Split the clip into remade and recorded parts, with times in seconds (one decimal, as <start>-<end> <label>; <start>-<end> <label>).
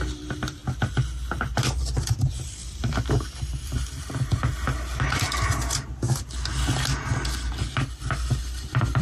0.0-0.6 remade; 0.6-1.8 recorded; 1.8-4.3 remade; 4.3-8.4 recorded; 8.4-9.0 remade